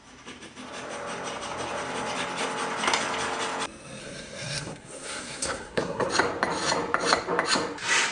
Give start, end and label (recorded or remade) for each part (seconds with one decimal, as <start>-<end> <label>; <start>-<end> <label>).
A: 0.0-4.0 recorded; 4.0-6.1 remade; 6.1-8.1 recorded